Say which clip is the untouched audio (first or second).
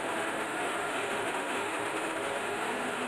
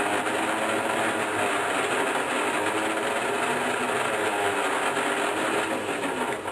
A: second